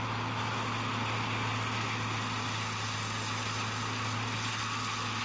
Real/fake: real